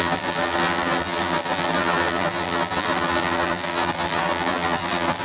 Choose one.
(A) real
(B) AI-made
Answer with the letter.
B